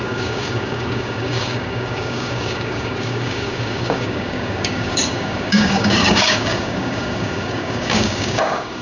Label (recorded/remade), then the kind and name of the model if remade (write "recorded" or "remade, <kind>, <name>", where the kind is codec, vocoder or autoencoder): remade, codec, DAC